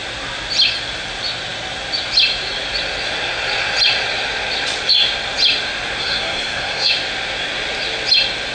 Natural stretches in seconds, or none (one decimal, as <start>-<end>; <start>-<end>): 0.0-6.0; 6.9-8.5